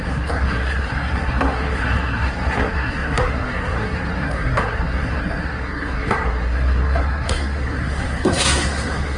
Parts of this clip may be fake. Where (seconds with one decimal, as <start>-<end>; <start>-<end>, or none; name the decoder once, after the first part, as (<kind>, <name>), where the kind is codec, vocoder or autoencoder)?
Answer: 0.0-9.2 (codec, SNAC)